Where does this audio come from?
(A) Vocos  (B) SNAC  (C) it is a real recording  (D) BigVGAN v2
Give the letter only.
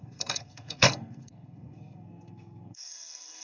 B